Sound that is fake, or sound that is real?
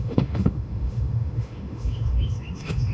fake